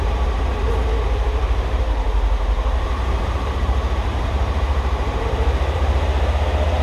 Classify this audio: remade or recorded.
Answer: remade